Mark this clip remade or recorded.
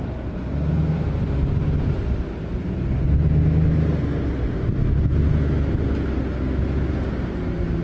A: recorded